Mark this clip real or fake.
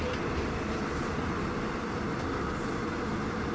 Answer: real